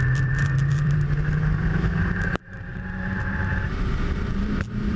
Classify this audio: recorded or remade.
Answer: remade